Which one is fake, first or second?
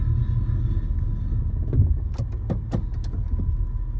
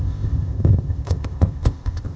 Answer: second